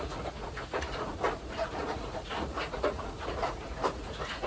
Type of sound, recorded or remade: remade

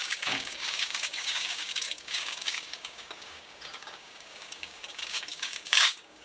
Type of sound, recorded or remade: remade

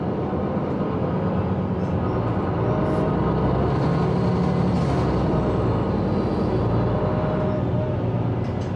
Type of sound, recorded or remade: recorded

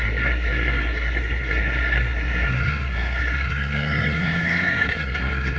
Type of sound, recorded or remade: remade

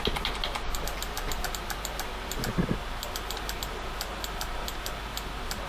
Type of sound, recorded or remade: recorded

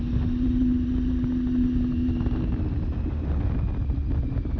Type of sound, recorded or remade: recorded